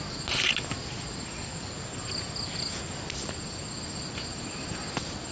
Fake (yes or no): no